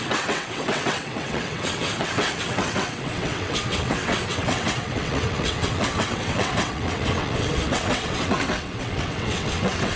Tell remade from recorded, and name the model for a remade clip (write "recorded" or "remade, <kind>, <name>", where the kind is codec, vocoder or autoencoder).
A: remade, vocoder, WaveNeXt